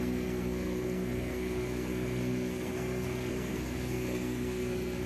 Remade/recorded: remade